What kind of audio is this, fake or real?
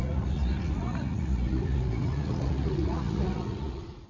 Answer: fake